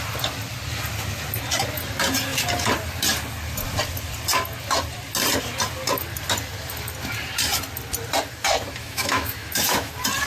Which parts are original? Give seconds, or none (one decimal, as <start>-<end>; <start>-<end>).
0.0-8.8; 9.9-10.3